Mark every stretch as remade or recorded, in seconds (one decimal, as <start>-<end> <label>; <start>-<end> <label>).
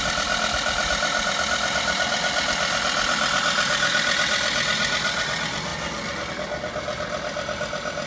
0.0-8.1 recorded